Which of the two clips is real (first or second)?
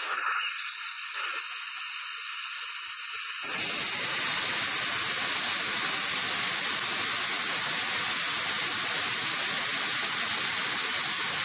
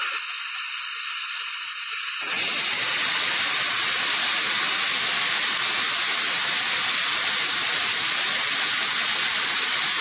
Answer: first